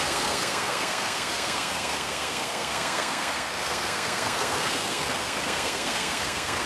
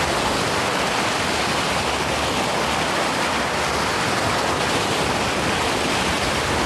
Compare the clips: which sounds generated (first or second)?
first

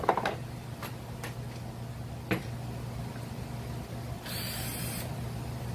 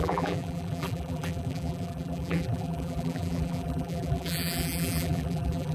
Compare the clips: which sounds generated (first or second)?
second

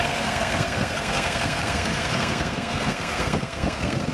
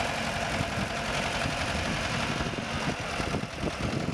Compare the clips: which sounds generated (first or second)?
first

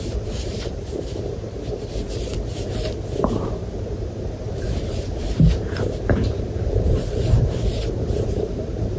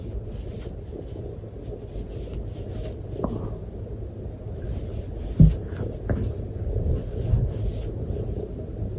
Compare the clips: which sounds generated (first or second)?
first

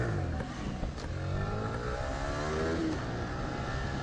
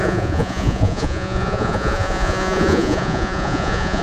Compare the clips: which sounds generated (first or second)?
second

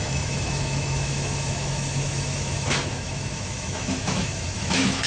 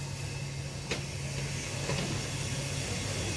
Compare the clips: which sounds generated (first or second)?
first